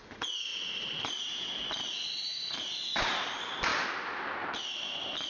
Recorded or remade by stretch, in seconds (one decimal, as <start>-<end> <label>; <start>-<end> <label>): 0.0-0.5 recorded; 0.5-2.7 remade; 2.7-3.7 recorded; 3.7-5.3 remade